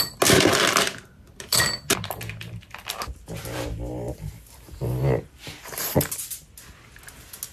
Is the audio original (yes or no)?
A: yes